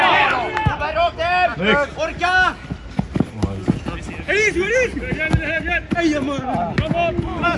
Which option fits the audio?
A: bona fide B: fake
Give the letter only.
A